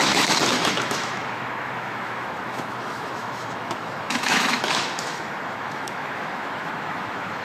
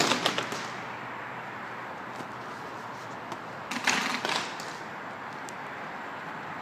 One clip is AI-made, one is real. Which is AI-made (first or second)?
first